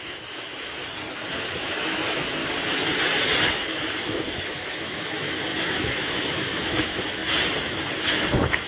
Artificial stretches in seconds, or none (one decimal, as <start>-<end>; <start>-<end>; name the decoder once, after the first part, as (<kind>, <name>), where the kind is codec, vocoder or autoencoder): 0.0-0.8 (autoencoder, DAC-VAE); 1.5-2.4; 3.5-7.2; 8.0-8.7